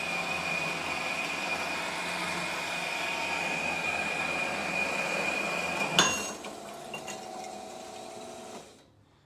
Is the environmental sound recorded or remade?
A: recorded